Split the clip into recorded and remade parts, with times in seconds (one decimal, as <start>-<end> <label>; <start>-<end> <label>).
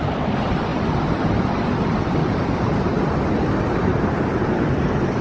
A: 0.0-2.2 recorded; 2.2-2.9 remade; 2.9-3.9 recorded; 3.9-4.7 remade; 4.7-5.2 recorded